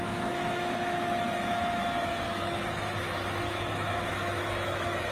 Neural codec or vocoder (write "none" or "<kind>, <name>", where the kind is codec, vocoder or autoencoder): autoencoder, DAC-VAE